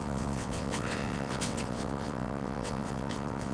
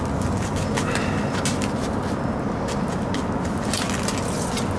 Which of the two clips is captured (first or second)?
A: second